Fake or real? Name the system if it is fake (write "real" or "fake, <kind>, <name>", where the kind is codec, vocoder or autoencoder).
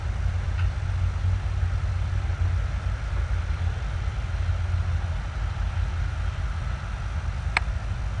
real